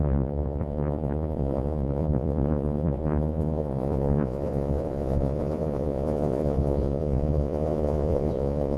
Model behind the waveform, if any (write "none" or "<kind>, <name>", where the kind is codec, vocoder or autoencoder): vocoder, Vocos